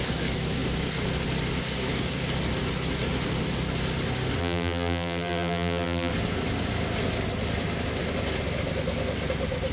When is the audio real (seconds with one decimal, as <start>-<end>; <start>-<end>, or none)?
0.0-4.4; 6.1-9.7

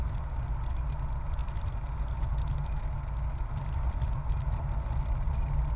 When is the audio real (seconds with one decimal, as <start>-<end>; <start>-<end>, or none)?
0.0-5.8

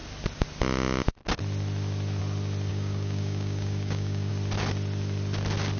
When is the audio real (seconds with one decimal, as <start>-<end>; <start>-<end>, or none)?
0.0-2.7; 4.3-5.8

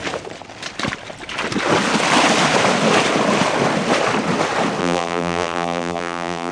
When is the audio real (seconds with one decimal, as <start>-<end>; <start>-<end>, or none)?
0.0-4.8